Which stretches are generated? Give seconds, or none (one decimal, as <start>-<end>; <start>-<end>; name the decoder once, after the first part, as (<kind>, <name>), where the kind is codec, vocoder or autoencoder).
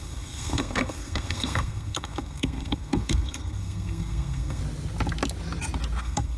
0.0-4.6 (codec, SNAC); 6.0-6.4